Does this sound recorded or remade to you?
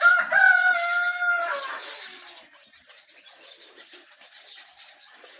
recorded